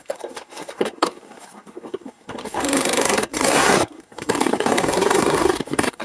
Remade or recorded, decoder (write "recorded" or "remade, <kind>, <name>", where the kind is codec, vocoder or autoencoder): remade, codec, SNAC